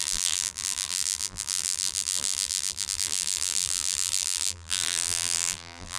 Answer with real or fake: fake